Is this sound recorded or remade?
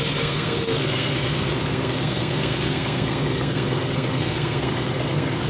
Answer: remade